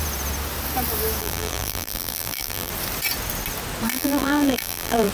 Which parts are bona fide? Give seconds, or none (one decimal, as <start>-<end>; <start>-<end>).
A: 0.0-1.2; 2.7-3.9